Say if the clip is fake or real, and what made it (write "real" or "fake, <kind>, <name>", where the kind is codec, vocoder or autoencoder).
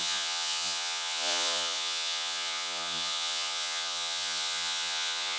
fake, vocoder, Vocos